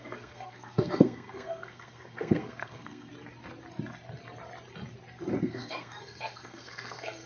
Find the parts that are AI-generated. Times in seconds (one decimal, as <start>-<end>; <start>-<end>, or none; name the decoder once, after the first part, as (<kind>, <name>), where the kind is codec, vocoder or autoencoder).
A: 0.0-3.1 (codec, SNAC); 5.4-7.3